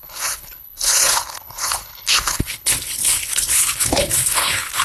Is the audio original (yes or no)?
no